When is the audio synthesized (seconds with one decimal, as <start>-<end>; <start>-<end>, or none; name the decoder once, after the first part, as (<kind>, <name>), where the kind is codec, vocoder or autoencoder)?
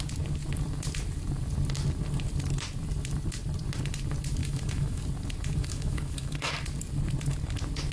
4.4-5.0 (autoencoder, DAC-VAE); 5.6-6.5